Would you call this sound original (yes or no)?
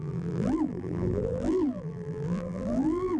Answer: no